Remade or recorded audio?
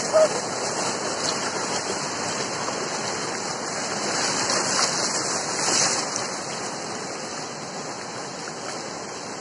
recorded